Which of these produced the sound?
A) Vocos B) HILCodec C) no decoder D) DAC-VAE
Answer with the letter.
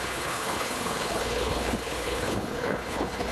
B